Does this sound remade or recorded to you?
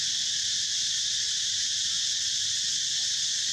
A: recorded